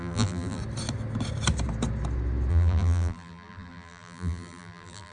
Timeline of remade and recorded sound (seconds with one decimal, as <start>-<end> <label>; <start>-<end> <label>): 0.0-0.6 remade; 0.6-2.5 recorded; 2.5-5.1 remade